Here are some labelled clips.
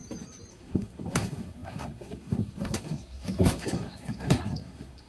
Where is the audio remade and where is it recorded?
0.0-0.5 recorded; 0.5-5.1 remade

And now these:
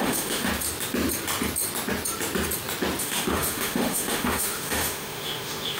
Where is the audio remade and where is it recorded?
0.0-0.5 remade; 0.5-3.0 recorded; 3.0-5.8 remade

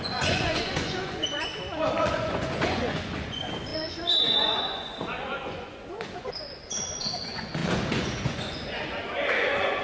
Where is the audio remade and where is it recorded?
0.0-1.5 remade; 1.5-2.1 recorded; 2.1-9.8 remade

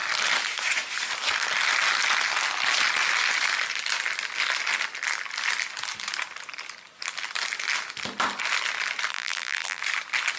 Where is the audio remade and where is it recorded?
0.0-9.1 recorded; 9.1-9.8 remade; 9.8-10.4 recorded

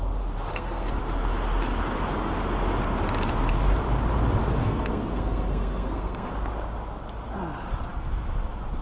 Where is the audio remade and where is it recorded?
0.0-0.5 recorded; 0.5-1.0 remade; 1.0-4.6 recorded; 4.6-6.3 remade; 6.3-8.8 recorded

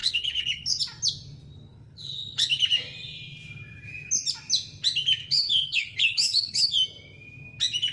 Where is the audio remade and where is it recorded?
0.0-0.8 remade; 0.8-1.7 recorded; 1.7-2.6 remade; 2.6-5.2 recorded; 5.2-6.7 remade; 6.7-7.9 recorded